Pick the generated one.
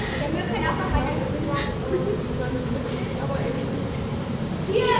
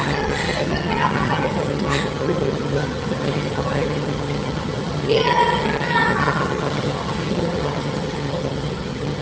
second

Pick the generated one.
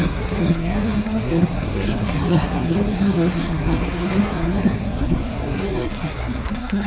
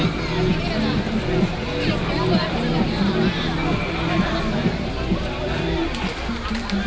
first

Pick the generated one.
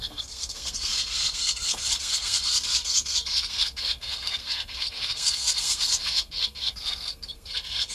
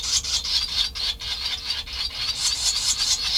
first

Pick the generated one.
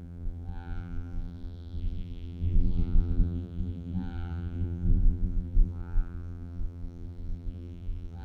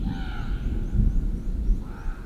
first